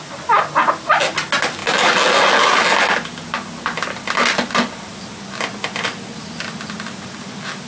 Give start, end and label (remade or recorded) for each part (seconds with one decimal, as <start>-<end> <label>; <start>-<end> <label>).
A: 0.0-7.7 recorded